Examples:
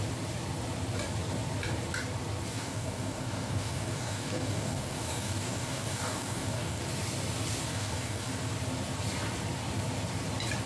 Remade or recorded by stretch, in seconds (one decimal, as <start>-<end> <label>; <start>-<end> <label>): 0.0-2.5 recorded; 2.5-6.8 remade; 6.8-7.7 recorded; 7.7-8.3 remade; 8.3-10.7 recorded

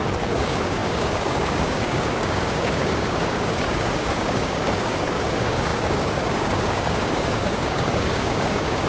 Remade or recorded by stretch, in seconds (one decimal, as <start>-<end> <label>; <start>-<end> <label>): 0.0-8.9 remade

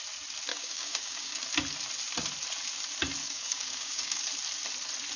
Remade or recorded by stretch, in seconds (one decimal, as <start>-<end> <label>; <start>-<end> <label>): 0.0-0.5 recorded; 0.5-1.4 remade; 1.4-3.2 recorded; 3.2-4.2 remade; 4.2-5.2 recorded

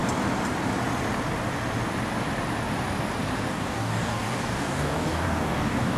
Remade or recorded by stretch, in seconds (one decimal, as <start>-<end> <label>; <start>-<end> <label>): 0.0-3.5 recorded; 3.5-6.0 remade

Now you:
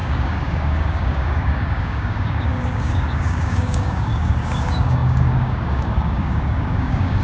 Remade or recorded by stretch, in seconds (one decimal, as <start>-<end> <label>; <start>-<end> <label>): 0.0-7.2 remade

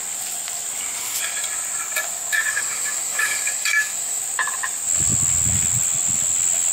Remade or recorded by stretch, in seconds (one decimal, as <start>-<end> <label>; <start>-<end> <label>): 0.0-2.5 recorded; 2.5-4.2 remade; 4.2-6.7 recorded

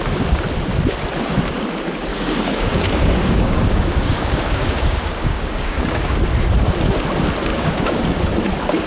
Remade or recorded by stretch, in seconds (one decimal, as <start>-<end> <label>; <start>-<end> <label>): 0.0-2.1 recorded; 2.1-6.3 remade; 6.3-7.5 recorded; 7.5-8.0 remade; 8.0-8.9 recorded